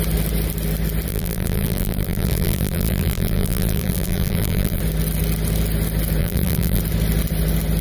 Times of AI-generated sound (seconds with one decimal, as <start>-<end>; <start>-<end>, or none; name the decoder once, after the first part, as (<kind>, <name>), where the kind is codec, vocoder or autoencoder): 1.1-4.8 (vocoder, BigVGAN v2); 6.2-6.8